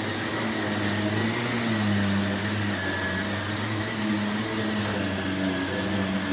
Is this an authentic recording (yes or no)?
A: yes